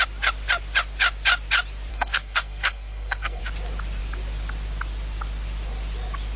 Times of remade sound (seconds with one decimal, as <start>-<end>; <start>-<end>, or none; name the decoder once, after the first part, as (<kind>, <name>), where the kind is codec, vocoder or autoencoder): 1.9-3.4 (codec, SNAC)